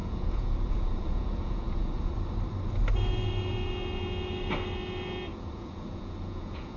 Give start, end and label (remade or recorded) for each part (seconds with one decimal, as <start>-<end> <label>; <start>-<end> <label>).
0.0-2.1 remade; 2.1-5.3 recorded; 5.3-6.8 remade